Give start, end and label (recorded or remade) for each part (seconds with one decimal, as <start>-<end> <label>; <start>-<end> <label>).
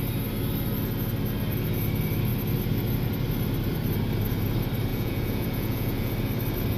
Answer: 0.0-4.9 recorded; 4.9-6.1 remade; 6.1-6.8 recorded